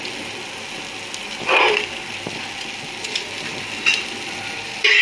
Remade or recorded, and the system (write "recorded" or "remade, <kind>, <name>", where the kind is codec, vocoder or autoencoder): recorded